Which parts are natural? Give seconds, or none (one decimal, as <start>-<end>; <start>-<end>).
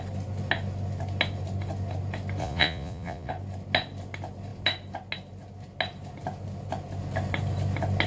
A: 0.0-2.4; 3.3-8.1